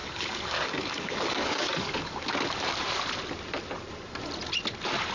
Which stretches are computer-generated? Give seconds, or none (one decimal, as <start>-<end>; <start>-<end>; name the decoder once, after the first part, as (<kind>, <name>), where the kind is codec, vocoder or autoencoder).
0.0-2.7 (codec, DAC)